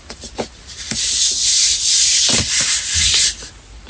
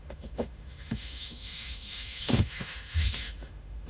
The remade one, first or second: second